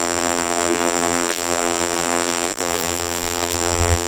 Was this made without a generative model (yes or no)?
no